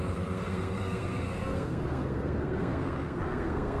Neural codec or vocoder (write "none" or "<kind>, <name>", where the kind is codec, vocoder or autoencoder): codec, SNAC